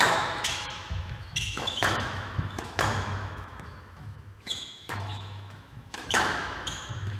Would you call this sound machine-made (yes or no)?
yes